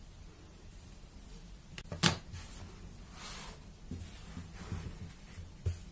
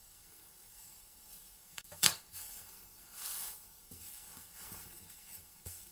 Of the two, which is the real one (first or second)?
first